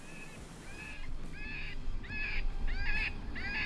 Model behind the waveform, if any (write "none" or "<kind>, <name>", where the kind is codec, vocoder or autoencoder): none